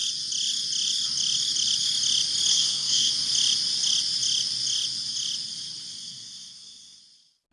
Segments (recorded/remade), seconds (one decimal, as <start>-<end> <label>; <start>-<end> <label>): 0.0-2.5 recorded; 2.5-3.1 remade; 3.1-6.0 recorded; 6.0-7.0 remade; 7.0-7.5 recorded